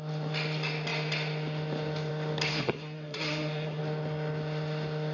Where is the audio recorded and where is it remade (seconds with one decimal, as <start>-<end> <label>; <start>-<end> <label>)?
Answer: 0.0-2.5 recorded; 2.5-3.8 remade; 3.8-5.1 recorded